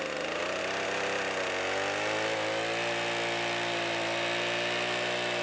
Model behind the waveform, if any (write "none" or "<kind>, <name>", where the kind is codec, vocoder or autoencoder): none